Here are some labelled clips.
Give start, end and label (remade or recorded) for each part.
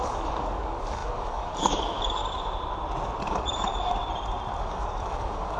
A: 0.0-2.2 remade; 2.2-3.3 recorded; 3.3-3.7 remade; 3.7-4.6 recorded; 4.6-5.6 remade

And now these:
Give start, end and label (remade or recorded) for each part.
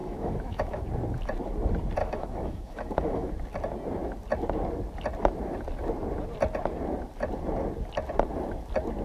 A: 0.0-0.8 remade; 0.8-2.0 recorded; 2.0-3.3 remade; 3.3-9.0 recorded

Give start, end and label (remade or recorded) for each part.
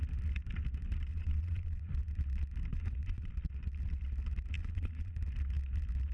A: 0.0-1.1 recorded; 1.1-1.9 remade; 1.9-2.7 recorded; 2.7-3.3 remade; 3.3-4.6 recorded; 4.6-5.2 remade; 5.2-6.1 recorded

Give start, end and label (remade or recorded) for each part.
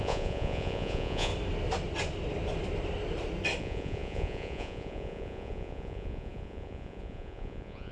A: 0.0-1.3 remade; 1.3-3.6 recorded; 3.6-7.9 remade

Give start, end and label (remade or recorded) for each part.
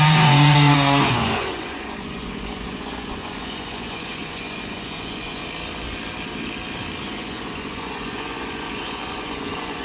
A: 0.0-5.4 remade; 5.4-7.0 recorded; 7.0-9.8 remade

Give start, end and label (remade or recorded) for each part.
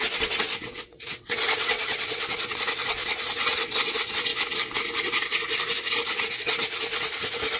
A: 0.0-4.3 remade; 4.3-6.4 recorded; 6.4-7.6 remade